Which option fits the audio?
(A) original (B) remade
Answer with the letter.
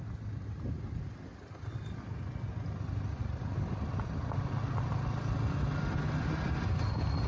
A